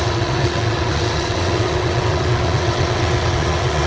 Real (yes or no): no